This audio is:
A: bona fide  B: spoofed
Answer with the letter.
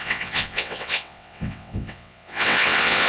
B